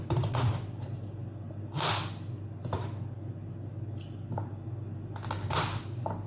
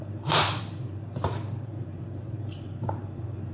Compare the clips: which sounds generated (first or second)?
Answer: second